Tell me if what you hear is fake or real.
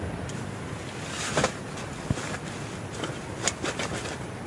real